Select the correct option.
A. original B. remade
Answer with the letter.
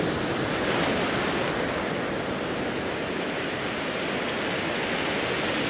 A